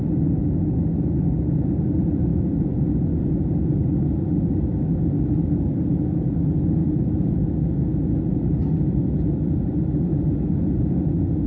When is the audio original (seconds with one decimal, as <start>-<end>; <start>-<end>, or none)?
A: 0.0-11.5